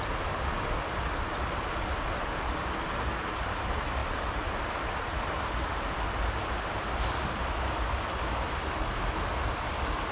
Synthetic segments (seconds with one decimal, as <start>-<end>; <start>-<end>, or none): 4.0-4.7